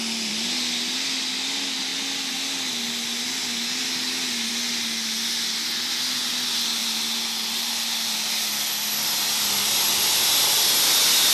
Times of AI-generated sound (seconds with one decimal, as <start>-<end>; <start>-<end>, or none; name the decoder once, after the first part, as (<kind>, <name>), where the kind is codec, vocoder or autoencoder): none